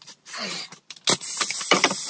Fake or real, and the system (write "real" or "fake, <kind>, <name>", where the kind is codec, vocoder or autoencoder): real